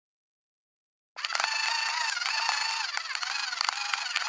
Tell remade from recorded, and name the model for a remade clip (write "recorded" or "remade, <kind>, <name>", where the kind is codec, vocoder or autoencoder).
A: recorded